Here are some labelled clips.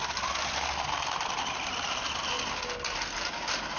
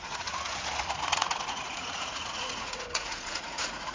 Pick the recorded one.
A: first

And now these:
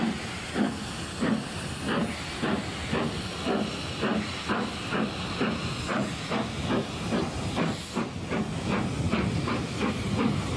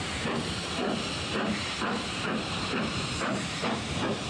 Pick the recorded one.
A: first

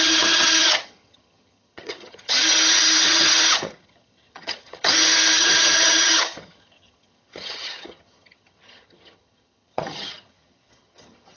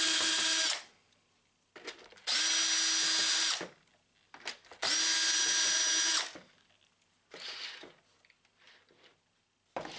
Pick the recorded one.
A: second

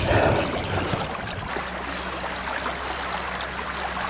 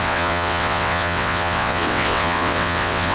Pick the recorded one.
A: first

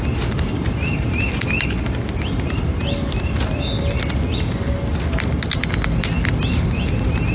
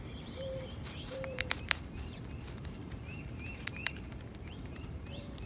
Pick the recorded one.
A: first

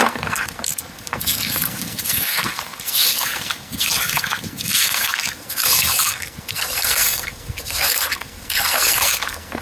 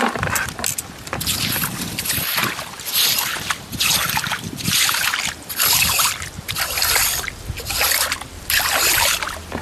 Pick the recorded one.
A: second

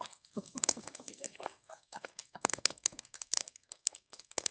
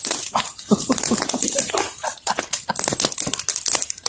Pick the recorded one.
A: second